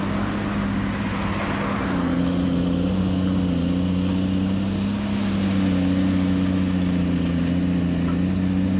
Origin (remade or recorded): recorded